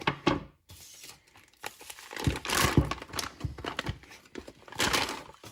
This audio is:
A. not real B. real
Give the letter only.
B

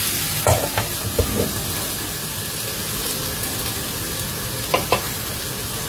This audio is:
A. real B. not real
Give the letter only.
A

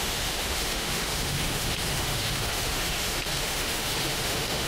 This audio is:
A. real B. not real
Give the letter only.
B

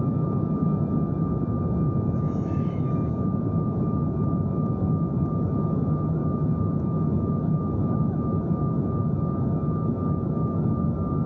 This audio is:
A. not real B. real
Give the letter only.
A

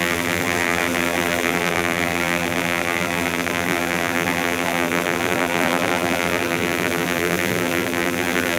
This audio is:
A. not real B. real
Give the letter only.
A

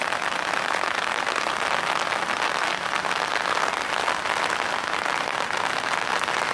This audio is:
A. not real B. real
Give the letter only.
B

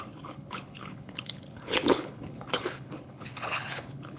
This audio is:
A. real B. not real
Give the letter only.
B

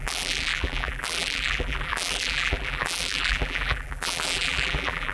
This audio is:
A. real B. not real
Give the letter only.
B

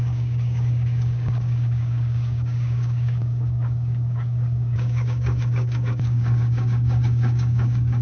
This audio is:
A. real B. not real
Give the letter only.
B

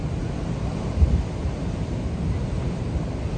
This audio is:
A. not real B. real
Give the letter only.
B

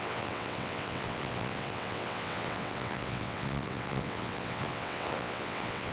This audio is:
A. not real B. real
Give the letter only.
A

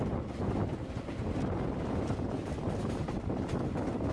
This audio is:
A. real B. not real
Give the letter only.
B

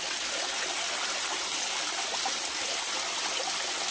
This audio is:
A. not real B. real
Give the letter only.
B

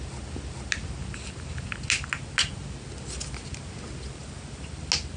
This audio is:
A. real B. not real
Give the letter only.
A